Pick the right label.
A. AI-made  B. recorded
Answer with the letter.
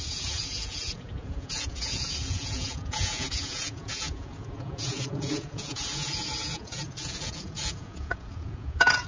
A